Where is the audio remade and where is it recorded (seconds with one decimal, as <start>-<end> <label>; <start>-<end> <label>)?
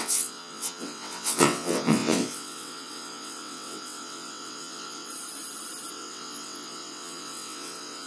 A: 0.0-5.1 remade; 5.1-5.9 recorded; 5.9-8.1 remade